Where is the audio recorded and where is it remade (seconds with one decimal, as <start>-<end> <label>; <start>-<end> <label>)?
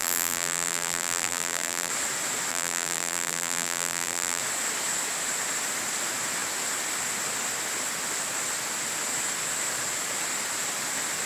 0.0-1.9 remade; 1.9-2.5 recorded; 2.5-4.4 remade; 4.4-11.3 recorded